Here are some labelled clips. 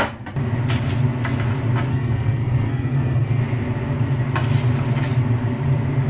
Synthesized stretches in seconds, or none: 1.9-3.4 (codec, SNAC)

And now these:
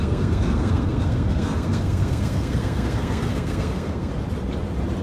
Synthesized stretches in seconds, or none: 0.0-4.1 (codec, SNAC)

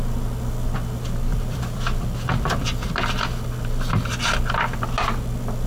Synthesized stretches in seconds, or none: 1.3-3.0 (vocoder, BigVGAN v2)

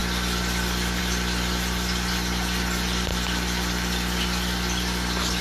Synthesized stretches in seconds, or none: none

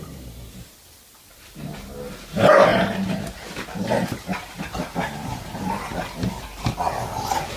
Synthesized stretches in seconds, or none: none

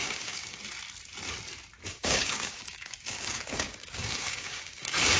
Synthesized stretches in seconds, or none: 0.0-0.6 (codec, DAC); 1.9-5.2